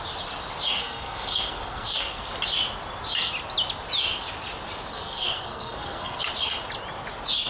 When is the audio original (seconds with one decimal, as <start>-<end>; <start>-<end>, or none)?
0.0-0.8; 2.3-4.9; 6.2-7.5